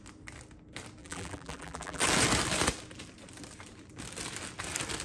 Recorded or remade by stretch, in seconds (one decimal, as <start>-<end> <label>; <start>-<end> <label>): 0.0-1.0 recorded; 1.0-2.0 remade; 2.0-5.0 recorded